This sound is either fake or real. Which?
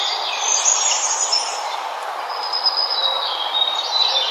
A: fake